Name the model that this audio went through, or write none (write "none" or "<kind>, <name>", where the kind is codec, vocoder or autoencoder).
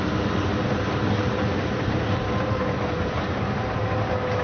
none